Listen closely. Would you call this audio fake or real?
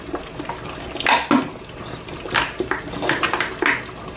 real